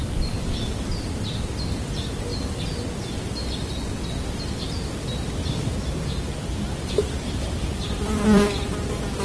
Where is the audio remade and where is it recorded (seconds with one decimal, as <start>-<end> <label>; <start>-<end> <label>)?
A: 0.0-9.2 recorded